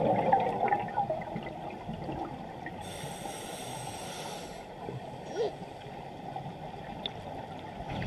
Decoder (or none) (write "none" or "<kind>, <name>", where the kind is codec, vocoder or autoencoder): none